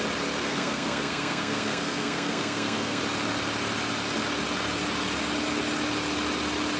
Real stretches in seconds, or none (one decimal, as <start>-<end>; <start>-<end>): 0.0-0.5; 3.0-6.8